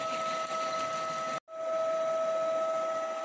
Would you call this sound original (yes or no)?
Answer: yes